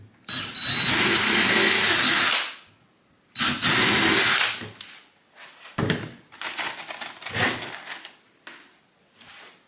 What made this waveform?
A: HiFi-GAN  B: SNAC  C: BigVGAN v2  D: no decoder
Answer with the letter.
D